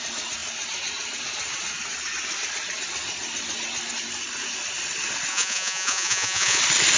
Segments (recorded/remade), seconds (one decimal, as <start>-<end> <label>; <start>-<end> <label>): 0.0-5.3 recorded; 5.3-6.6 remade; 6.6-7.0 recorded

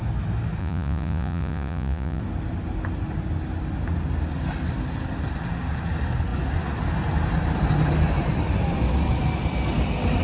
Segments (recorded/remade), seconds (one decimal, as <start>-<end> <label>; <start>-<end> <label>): 0.0-0.6 recorded; 0.6-2.2 remade; 2.2-10.2 recorded

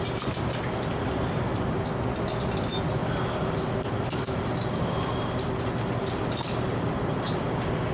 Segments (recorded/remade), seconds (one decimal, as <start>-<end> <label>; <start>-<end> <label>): 0.0-7.9 recorded

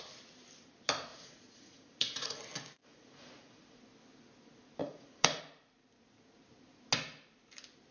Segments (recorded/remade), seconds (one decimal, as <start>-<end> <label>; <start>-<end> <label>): 0.0-1.1 recorded; 1.1-2.4 remade; 2.4-2.8 recorded; 2.8-3.8 remade; 3.8-4.8 recorded; 4.8-5.4 remade; 5.4-7.9 recorded

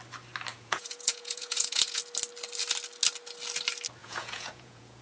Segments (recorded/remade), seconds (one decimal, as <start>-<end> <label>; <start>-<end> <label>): 0.0-0.5 recorded; 0.5-2.0 remade; 2.0-4.0 recorded; 4.0-5.0 remade

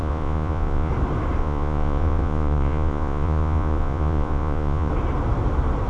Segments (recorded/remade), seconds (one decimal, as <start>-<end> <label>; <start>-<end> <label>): 0.0-0.9 remade; 0.9-1.4 recorded; 1.4-4.9 remade; 4.9-5.9 recorded